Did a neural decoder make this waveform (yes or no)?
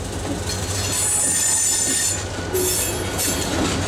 no